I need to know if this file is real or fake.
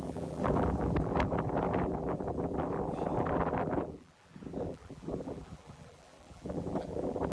fake